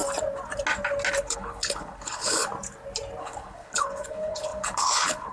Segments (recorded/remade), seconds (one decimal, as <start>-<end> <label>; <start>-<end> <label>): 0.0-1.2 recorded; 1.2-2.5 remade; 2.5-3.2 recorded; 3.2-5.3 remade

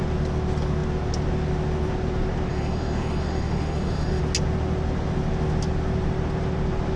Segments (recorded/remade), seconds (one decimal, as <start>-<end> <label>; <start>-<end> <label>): 0.0-2.5 recorded; 2.5-4.2 remade; 4.2-7.0 recorded

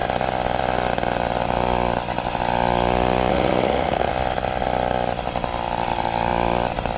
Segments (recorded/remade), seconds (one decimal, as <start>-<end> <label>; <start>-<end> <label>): 0.0-3.3 recorded; 3.3-4.1 remade; 4.1-7.0 recorded